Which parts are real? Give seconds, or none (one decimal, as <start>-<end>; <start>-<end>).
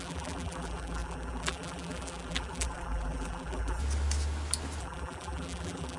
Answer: 3.8-4.8